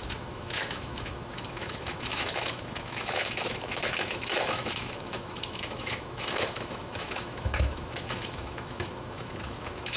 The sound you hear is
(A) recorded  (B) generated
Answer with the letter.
B